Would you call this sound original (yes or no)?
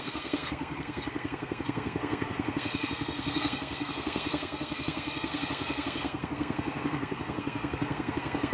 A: no